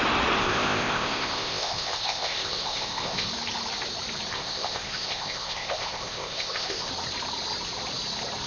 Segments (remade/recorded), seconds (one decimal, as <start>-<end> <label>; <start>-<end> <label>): 0.0-0.4 recorded; 0.4-3.3 remade; 3.3-4.3 recorded; 4.3-6.9 remade; 6.9-8.5 recorded